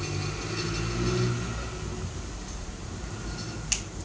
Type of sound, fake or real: real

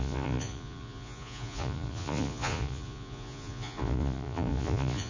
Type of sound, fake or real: fake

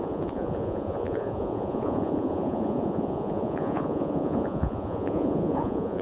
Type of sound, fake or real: fake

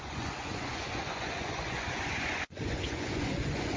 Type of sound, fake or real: fake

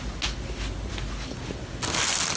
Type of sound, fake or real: real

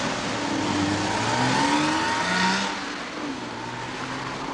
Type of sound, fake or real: real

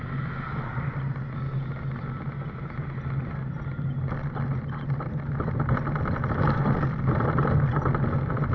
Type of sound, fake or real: real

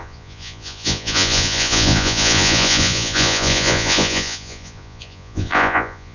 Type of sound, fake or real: fake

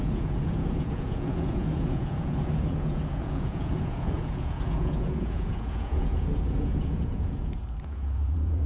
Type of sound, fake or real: fake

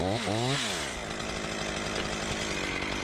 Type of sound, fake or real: real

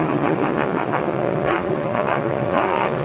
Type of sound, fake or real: fake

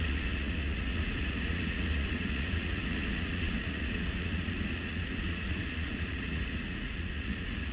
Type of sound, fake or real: fake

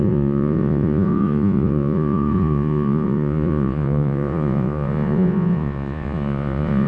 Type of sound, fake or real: fake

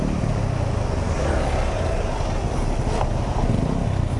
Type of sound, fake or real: real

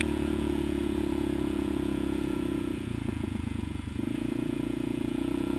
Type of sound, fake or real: fake